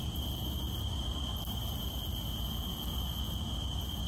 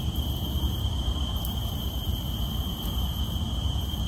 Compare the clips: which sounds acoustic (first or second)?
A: first